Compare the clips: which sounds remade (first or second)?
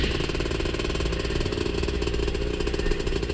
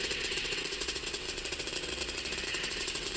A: second